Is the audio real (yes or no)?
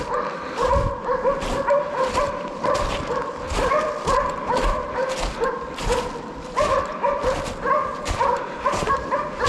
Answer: no